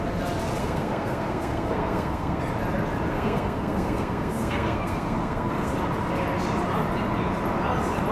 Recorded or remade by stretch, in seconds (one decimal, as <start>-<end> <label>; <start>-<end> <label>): 0.0-0.6 recorded; 0.6-2.4 remade; 2.4-3.1 recorded; 3.1-5.7 remade; 5.7-8.1 recorded